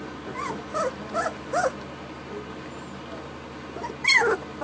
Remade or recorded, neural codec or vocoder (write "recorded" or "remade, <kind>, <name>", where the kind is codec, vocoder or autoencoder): recorded